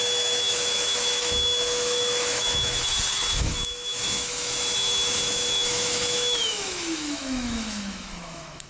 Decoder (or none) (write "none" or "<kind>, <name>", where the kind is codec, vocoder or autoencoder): autoencoder, DAC-VAE